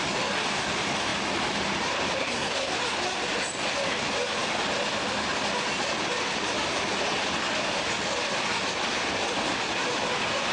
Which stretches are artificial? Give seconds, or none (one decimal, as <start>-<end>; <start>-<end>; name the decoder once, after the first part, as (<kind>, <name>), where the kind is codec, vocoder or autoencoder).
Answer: 2.2-2.7 (codec, SNAC)